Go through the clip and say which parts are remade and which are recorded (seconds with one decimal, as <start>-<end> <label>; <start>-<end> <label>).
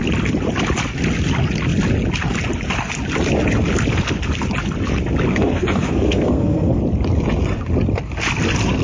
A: 0.0-5.3 recorded; 5.3-6.8 remade; 6.8-8.8 recorded